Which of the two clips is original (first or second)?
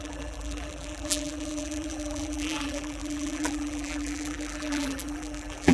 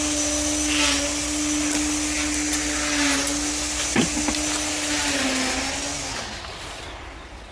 second